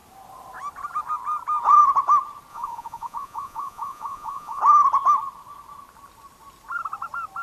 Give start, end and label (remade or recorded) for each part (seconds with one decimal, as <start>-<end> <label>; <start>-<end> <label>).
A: 0.0-2.5 recorded; 2.5-4.6 remade; 4.6-7.4 recorded